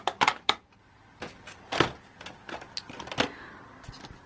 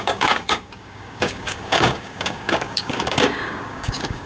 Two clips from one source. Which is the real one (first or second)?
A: first